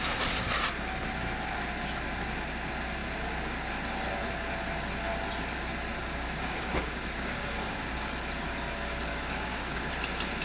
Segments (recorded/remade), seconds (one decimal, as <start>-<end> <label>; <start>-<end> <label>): 0.0-6.0 recorded; 6.0-7.8 remade; 7.8-9.1 recorded; 9.1-9.9 remade; 9.9-10.4 recorded